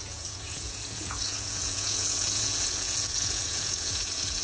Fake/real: fake